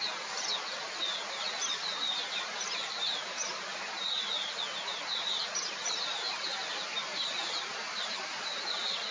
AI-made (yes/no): no